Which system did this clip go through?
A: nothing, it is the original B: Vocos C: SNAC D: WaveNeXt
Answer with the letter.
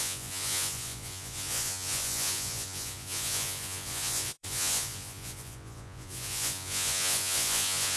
B